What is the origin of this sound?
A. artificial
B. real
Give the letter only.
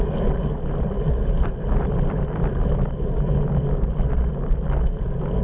B